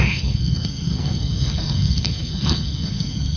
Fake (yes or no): yes